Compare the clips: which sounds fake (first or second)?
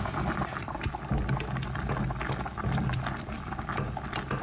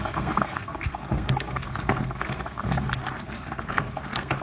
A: second